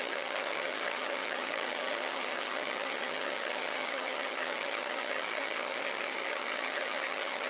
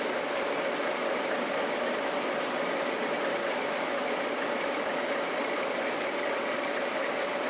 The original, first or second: second